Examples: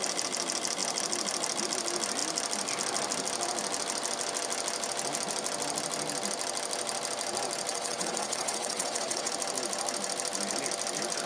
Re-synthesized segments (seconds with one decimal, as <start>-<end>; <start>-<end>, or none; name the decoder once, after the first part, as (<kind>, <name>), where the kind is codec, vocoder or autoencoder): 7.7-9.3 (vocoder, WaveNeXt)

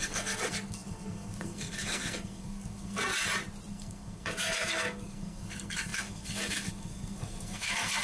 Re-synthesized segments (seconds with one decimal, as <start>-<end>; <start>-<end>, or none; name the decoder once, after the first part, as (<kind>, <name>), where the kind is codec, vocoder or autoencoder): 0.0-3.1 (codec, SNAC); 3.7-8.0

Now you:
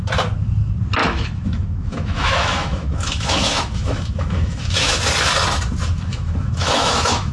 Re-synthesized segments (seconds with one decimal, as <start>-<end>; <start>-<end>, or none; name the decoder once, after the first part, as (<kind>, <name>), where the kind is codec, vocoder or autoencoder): 1.0-5.0 (autoencoder, DAC-VAE); 6.1-7.3

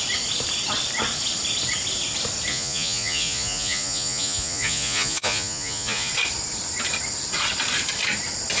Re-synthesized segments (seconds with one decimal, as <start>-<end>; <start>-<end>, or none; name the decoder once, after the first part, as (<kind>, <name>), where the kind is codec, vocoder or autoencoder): 2.5-6.1 (vocoder, Vocos)

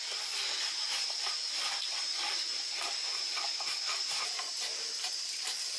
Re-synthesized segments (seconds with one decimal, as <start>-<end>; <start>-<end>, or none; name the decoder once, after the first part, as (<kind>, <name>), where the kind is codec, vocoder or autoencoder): none

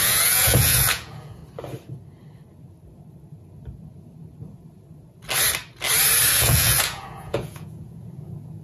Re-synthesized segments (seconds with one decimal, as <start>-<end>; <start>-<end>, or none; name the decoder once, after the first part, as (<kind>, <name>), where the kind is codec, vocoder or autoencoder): 0.0-1.4 (vocoder, Vocos); 6.3-8.6

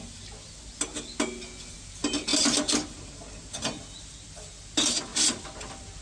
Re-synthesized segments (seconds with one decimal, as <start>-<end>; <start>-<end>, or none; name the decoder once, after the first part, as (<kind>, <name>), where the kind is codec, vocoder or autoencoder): none

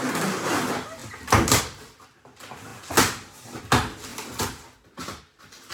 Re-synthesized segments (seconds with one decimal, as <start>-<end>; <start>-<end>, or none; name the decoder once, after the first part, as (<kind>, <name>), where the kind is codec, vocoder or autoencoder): none